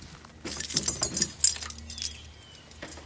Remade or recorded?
recorded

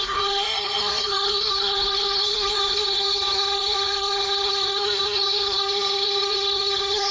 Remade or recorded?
remade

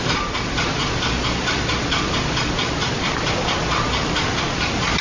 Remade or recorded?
recorded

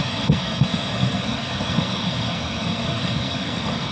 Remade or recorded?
remade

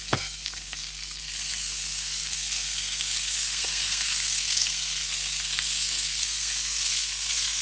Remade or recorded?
remade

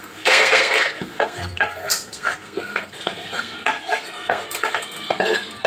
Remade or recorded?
remade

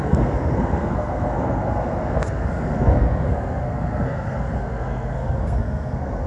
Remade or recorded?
remade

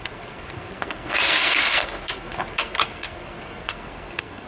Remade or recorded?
remade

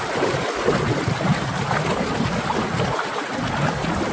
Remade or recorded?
recorded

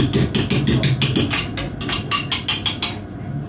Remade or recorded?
recorded